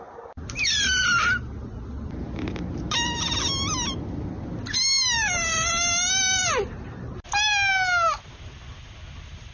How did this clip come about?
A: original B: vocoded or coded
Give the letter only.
A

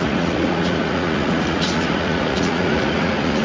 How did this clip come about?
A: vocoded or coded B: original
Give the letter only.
A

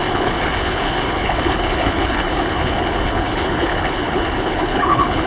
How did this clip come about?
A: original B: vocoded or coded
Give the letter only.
B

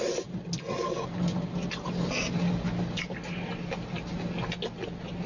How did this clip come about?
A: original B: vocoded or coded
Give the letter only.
A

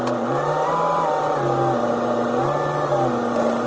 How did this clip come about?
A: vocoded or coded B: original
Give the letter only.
B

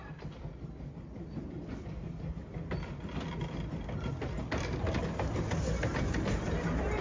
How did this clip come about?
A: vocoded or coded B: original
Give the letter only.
B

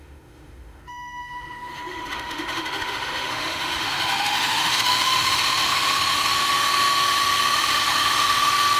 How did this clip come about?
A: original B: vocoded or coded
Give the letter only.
B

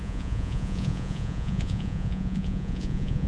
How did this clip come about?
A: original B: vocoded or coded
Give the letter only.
B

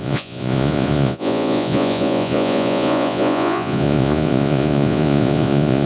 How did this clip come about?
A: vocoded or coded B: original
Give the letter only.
A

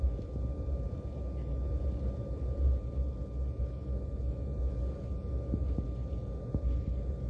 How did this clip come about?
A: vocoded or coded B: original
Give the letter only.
B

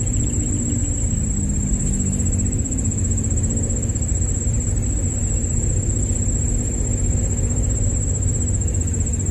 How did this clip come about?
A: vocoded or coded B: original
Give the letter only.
B